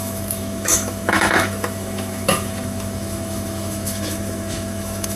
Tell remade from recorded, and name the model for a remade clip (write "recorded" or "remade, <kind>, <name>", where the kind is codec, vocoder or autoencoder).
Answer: remade, autoencoder, DAC-VAE